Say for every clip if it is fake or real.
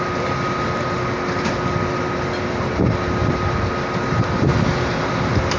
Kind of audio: real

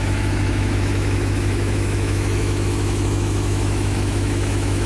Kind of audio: fake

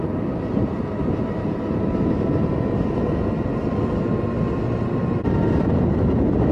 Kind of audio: real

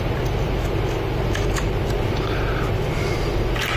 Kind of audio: real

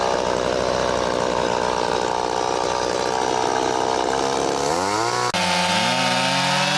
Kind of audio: real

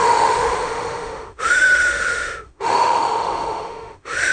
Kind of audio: fake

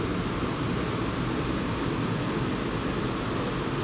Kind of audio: real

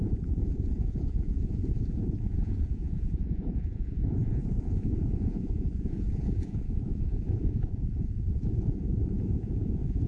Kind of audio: fake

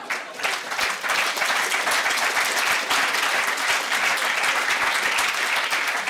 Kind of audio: real